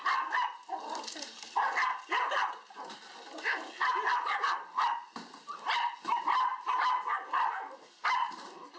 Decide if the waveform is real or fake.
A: real